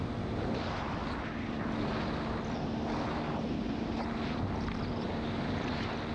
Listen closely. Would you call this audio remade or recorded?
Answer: recorded